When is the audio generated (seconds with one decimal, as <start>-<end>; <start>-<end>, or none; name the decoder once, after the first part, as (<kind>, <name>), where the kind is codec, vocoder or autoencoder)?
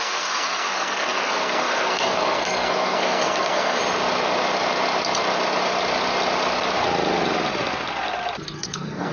0.0-3.8 (codec, SNAC); 8.4-9.1